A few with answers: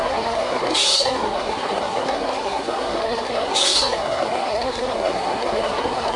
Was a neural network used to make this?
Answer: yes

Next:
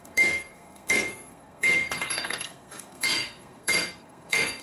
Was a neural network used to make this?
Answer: yes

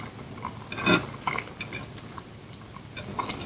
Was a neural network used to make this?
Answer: no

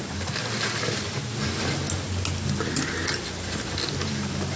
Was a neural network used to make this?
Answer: no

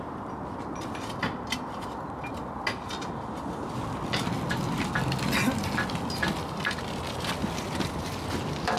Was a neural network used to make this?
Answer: no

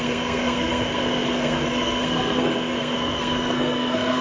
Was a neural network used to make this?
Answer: yes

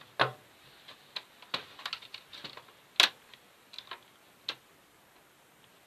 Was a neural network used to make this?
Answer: no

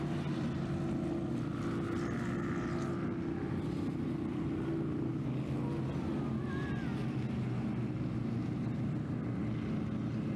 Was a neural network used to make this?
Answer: no